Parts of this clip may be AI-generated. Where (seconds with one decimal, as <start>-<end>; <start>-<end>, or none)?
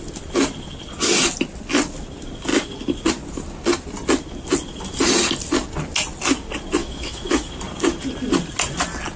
6.8-7.5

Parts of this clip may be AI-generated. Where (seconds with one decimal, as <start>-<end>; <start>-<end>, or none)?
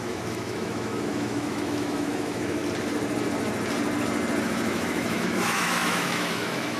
0.0-2.6; 4.4-6.8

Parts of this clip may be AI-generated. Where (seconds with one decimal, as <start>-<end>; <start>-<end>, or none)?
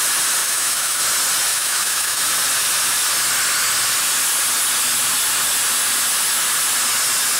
0.4-1.0; 1.5-2.2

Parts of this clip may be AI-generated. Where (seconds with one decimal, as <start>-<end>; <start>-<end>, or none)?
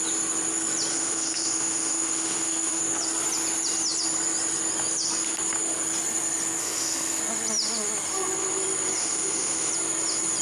0.9-2.8; 6.6-7.2; 9.0-9.7